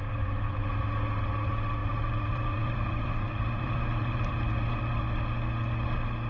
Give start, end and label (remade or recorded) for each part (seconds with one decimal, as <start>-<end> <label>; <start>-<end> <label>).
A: 0.0-0.8 remade; 0.8-1.8 recorded; 1.8-4.9 remade; 4.9-6.3 recorded